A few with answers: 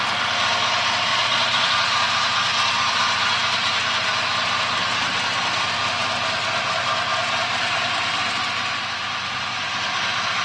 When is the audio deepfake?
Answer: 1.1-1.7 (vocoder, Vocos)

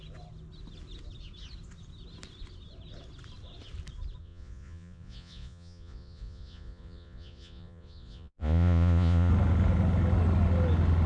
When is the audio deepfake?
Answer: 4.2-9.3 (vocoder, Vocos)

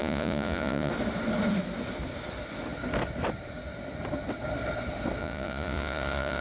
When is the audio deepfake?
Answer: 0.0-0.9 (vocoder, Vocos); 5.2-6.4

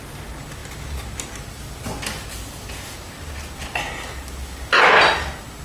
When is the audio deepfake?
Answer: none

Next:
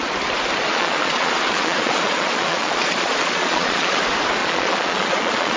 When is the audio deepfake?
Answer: 0.6-4.0 (vocoder, Vocos); 4.4-5.6

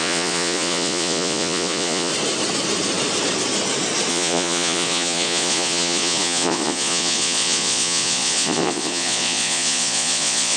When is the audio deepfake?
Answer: 0.0-2.1 (vocoder, Vocos); 4.1-10.6

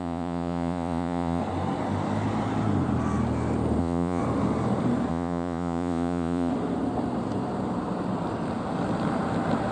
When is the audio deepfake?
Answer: 0.0-1.4 (vocoder, Vocos); 3.8-4.2; 5.1-6.5

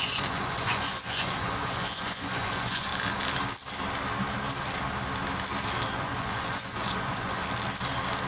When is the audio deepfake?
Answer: 0.0-2.9 (vocoder, Vocos); 5.9-7.4